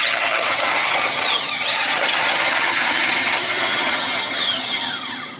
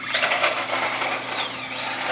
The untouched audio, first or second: second